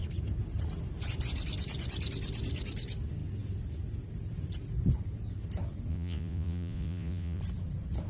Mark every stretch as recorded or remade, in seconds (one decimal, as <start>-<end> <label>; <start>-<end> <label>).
0.0-5.9 recorded; 5.9-7.4 remade; 7.4-8.1 recorded